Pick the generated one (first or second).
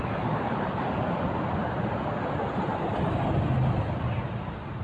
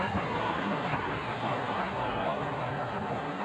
second